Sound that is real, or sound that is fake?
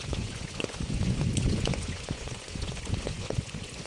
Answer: fake